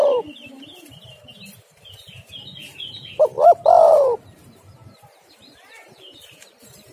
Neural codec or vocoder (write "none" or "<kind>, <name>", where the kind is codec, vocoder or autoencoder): vocoder, BigVGAN v2